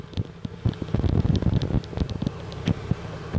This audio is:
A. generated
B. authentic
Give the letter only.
B